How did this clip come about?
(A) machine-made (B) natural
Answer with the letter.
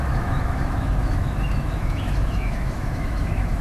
A